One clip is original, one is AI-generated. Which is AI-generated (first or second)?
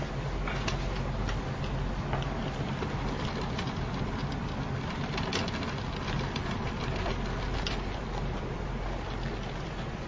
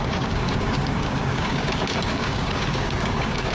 second